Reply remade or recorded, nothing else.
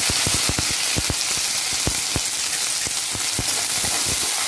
recorded